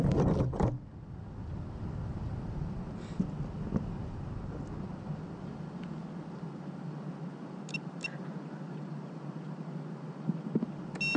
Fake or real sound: real